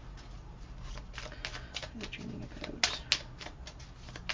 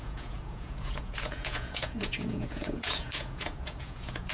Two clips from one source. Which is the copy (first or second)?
second